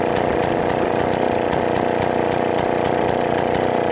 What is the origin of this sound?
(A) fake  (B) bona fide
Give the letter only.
B